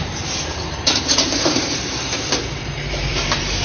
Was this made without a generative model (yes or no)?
no